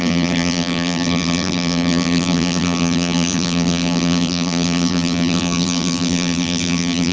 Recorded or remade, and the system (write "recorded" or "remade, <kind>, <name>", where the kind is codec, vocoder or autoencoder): remade, vocoder, BigVGAN v2